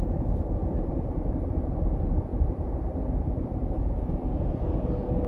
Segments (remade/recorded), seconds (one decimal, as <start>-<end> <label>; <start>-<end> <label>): 0.0-0.6 recorded; 0.6-1.1 remade; 1.1-5.3 recorded

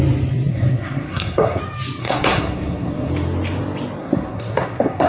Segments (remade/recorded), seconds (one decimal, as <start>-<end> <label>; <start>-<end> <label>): 0.0-0.5 recorded; 0.5-1.6 remade; 1.6-2.0 recorded; 2.0-3.1 remade; 3.1-4.0 recorded; 4.0-5.1 remade

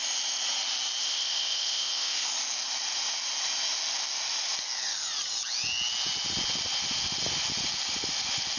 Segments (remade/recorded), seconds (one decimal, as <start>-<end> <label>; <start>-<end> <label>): 0.0-1.0 recorded; 1.0-2.3 remade; 2.3-8.6 recorded